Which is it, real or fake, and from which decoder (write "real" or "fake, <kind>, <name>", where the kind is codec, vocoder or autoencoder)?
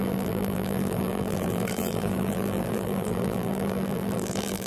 fake, vocoder, BigVGAN v2